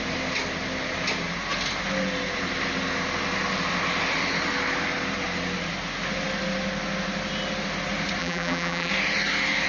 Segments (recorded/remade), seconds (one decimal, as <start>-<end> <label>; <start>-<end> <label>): 0.0-8.2 recorded; 8.2-8.9 remade; 8.9-9.7 recorded